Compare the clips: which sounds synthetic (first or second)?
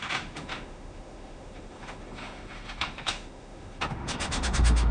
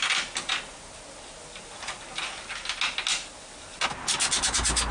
first